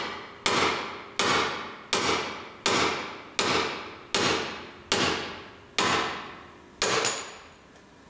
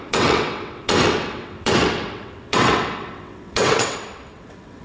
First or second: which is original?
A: first